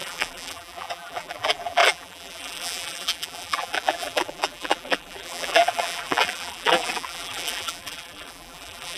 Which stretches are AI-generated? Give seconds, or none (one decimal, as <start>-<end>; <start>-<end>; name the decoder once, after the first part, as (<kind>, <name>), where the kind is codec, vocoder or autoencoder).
0.0-9.0 (vocoder, BigVGAN v2)

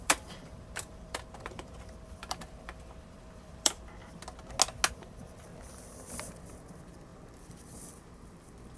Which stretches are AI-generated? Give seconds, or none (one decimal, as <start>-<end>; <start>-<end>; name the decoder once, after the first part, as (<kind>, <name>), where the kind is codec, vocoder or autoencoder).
0.0-4.0 (vocoder, BigVGAN v2); 4.9-5.5; 6.1-8.8

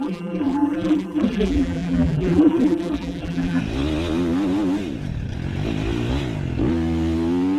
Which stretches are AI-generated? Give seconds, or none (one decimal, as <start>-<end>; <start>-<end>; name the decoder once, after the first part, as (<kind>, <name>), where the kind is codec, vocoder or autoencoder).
0.0-3.6 (vocoder, BigVGAN v2)

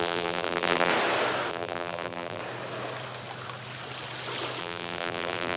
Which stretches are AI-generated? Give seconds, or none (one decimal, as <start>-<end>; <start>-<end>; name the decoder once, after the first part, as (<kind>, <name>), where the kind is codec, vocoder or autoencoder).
0.0-0.9 (vocoder, BigVGAN v2); 1.5-2.4; 4.6-5.6

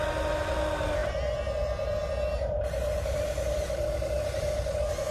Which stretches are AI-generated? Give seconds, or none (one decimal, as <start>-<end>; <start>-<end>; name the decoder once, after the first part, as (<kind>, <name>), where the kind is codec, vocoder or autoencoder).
none

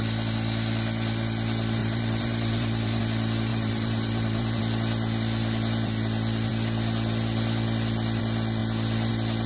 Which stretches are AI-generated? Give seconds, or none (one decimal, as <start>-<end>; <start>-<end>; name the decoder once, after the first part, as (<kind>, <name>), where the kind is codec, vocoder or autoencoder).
1.8-3.0 (vocoder, BigVGAN v2); 3.5-4.6

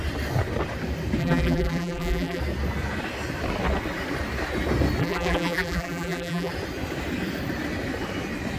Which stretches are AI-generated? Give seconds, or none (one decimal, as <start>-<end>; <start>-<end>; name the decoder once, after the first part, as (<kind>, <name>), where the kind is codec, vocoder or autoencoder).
1.2-2.4 (vocoder, BigVGAN v2); 5.0-6.5